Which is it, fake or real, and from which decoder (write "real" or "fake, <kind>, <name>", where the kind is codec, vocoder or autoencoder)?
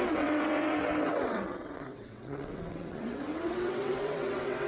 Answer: fake, vocoder, WaveNeXt